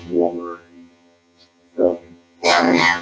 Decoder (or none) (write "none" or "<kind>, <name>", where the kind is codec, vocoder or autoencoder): vocoder, HiFi-GAN